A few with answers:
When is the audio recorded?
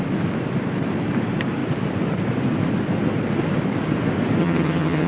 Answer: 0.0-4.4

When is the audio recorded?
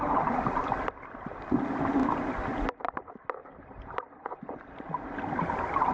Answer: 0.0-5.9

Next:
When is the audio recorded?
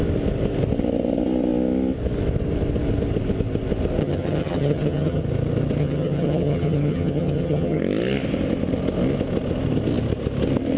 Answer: 0.0-4.0; 5.2-5.8; 7.8-10.8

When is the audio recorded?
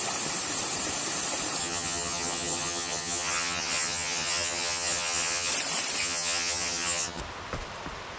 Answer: 0.0-1.6; 5.5-6.0; 7.2-8.2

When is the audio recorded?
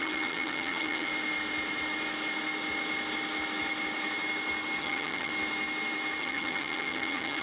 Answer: 1.1-4.8; 5.3-6.2